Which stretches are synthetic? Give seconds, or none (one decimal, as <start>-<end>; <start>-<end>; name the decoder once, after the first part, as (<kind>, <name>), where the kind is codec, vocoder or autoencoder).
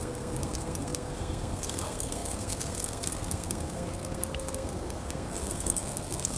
0.0-6.4 (codec, SNAC)